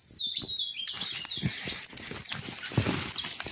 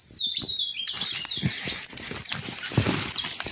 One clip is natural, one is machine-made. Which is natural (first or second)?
first